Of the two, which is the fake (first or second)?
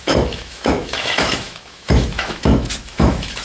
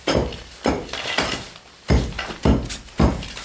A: first